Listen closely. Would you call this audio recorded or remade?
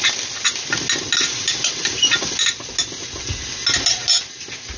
recorded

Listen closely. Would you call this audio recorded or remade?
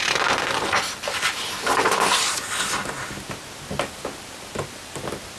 recorded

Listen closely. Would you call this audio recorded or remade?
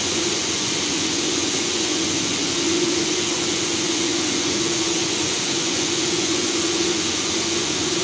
remade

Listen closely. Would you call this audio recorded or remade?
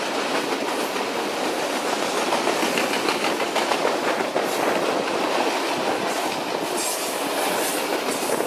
recorded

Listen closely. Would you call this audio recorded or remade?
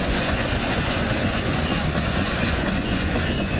remade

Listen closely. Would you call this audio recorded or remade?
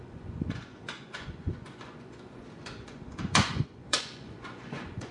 remade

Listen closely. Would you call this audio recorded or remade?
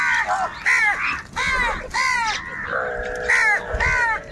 recorded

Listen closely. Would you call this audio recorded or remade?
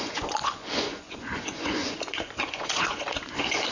remade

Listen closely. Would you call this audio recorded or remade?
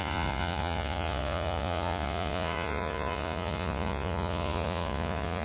remade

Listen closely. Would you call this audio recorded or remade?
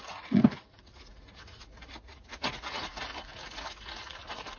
remade